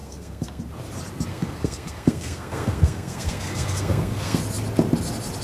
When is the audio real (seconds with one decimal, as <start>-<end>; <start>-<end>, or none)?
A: 0.6-1.3; 4.4-5.4